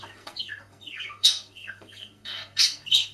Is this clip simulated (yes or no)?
yes